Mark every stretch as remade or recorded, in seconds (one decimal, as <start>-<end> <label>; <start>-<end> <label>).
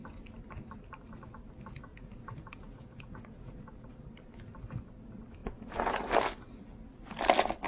0.0-1.9 recorded; 1.9-3.9 remade; 3.9-5.4 recorded; 5.4-6.0 remade; 6.0-7.7 recorded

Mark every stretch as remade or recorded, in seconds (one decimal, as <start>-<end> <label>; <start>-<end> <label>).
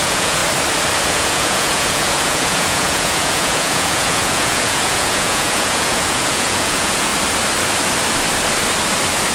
0.0-0.4 remade; 0.4-1.0 recorded; 1.0-7.1 remade; 7.1-9.3 recorded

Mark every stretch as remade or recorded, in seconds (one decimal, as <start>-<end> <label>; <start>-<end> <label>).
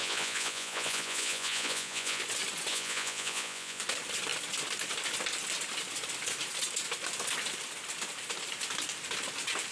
0.0-2.2 remade; 2.2-2.7 recorded; 2.7-3.8 remade; 3.8-9.7 recorded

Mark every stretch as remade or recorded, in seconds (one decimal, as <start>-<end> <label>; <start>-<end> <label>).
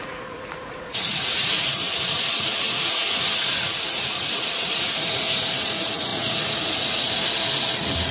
0.0-8.1 remade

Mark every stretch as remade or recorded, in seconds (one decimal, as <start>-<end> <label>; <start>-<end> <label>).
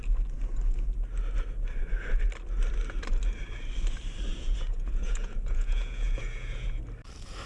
0.0-4.3 recorded; 4.3-6.8 remade; 6.8-7.5 recorded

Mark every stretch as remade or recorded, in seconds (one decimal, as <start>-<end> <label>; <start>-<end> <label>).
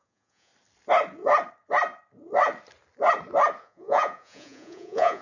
0.0-0.5 remade; 0.5-3.6 recorded; 3.6-5.2 remade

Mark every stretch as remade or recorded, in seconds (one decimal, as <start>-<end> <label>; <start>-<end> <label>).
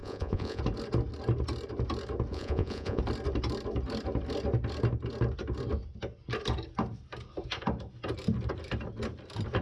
0.0-0.6 remade; 0.6-2.3 recorded; 2.3-3.0 remade; 3.0-9.6 recorded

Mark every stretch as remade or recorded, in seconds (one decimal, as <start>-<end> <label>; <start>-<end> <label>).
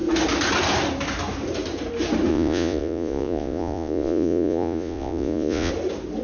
0.0-2.3 recorded; 2.3-5.7 remade; 5.7-6.2 recorded